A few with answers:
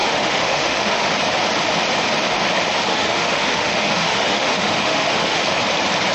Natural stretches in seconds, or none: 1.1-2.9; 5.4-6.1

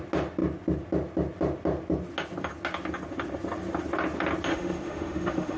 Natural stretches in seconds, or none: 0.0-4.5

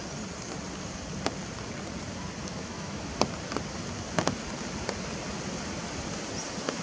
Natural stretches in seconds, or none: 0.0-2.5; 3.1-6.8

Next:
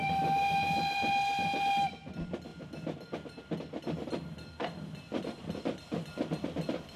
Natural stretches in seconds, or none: 0.0-7.0

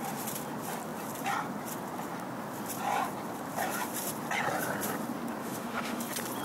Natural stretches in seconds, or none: 0.0-5.4; 6.0-6.4

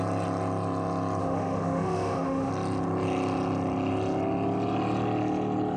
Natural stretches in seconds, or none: 0.0-1.2; 2.5-5.8

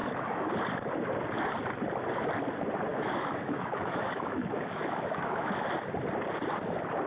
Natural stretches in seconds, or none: 0.5-2.9; 5.5-7.1

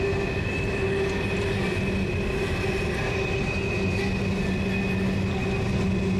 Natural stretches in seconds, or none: 0.0-6.2